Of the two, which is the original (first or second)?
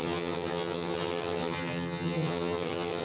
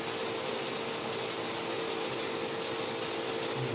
second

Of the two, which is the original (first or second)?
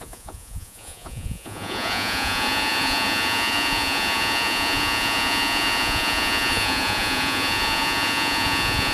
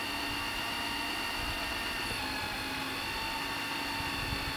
second